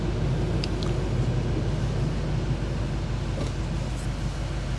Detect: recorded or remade recorded